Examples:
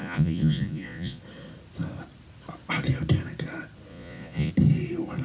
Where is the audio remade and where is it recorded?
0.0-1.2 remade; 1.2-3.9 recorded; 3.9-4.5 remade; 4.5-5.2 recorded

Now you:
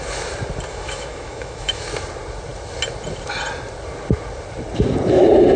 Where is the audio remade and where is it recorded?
0.0-0.7 recorded; 0.7-1.8 remade; 1.8-5.6 recorded

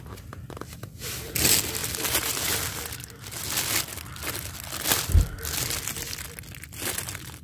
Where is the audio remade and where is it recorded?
0.0-7.4 recorded

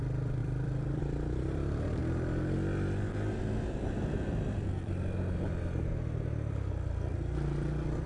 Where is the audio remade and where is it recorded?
0.0-2.0 remade; 2.0-3.1 recorded; 3.1-5.9 remade; 5.9-6.7 recorded; 6.7-8.1 remade

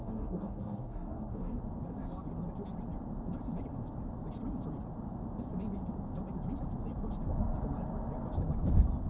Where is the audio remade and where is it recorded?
0.0-1.6 remade; 1.6-9.1 recorded

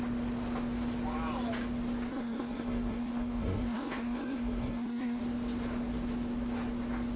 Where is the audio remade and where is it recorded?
0.0-2.1 recorded; 2.1-5.2 remade; 5.2-7.2 recorded